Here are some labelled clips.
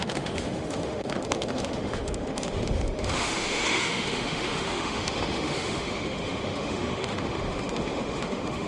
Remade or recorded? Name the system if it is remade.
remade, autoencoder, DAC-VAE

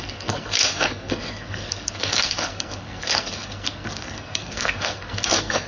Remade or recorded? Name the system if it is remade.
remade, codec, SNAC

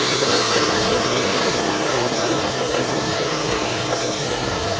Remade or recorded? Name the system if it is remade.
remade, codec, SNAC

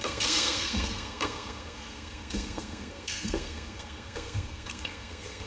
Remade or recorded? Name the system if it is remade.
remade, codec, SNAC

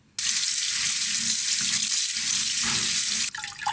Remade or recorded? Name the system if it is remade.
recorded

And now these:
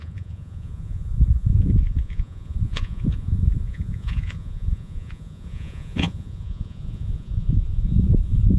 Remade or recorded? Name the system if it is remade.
remade, vocoder, Vocos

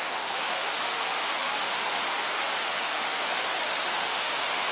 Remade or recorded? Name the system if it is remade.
remade, autoencoder, DAC-VAE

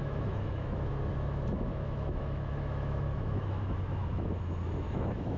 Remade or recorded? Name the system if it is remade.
remade, autoencoder, DAC-VAE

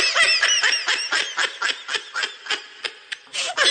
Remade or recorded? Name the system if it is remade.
recorded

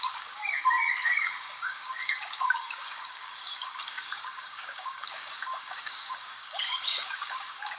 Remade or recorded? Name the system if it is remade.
remade, codec, DAC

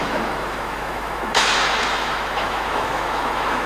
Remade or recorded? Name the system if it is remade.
remade, autoencoder, DAC-VAE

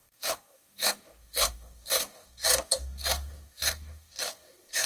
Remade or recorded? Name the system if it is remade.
remade, codec, DAC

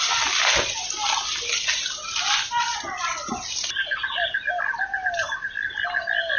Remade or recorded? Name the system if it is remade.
recorded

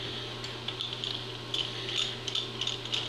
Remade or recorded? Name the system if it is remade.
recorded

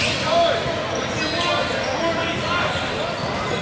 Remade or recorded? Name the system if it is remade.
recorded